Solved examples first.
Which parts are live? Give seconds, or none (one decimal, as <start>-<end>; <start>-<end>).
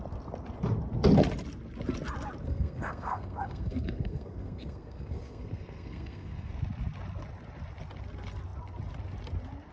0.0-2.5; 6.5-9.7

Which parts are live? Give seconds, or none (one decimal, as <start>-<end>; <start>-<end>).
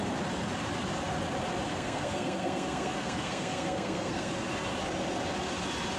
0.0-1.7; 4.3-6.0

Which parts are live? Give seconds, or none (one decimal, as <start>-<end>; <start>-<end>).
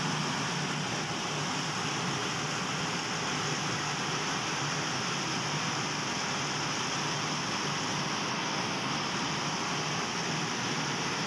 0.0-8.3; 8.9-11.3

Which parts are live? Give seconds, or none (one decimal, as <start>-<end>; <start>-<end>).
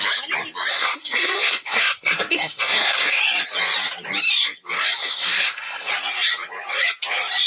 0.0-0.7; 3.2-5.0; 5.9-7.5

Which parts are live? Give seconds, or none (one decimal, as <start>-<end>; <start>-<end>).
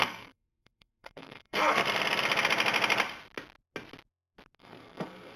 1.8-4.6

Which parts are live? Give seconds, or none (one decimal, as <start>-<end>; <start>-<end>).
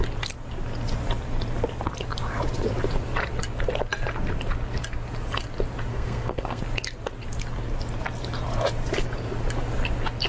0.0-5.9; 6.6-10.3